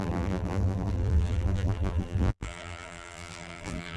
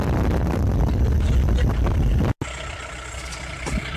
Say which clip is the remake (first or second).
first